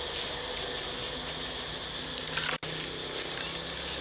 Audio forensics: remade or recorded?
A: recorded